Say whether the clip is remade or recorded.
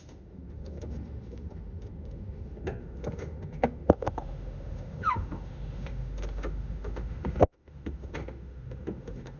remade